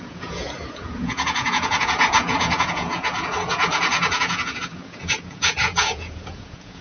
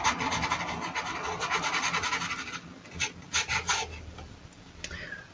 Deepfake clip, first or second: first